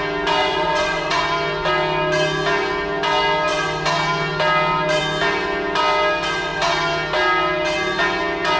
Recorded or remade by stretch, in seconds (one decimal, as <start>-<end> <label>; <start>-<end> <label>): 0.0-0.4 recorded; 0.4-1.2 remade; 1.2-8.6 recorded